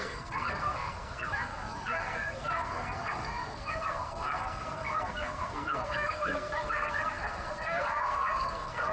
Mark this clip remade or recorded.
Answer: remade